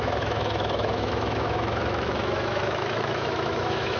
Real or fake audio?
fake